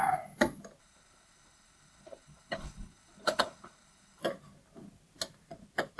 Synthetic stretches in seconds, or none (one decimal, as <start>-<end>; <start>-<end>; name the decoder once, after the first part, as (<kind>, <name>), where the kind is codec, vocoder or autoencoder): 0.8-4.2 (codec, HILCodec)